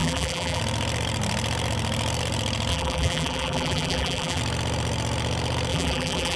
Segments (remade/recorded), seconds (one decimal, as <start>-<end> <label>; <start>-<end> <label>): 0.0-0.6 remade; 0.6-2.7 recorded; 2.7-4.4 remade; 4.4-5.7 recorded; 5.7-6.4 remade